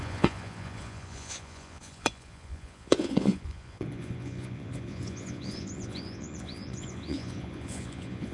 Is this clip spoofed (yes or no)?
yes